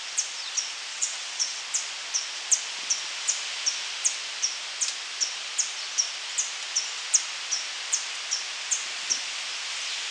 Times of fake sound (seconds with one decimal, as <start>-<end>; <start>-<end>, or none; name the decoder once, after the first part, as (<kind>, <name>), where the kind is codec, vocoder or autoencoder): 0.9-1.6 (vocoder, WaveNeXt)